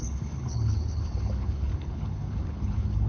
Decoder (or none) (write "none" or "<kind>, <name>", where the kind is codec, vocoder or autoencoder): codec, HILCodec